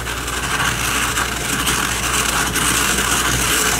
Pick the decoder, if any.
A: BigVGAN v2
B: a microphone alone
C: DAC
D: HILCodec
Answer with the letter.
B